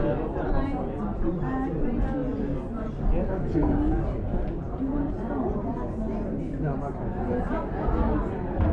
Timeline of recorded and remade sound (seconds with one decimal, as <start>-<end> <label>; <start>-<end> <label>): 0.0-8.7 recorded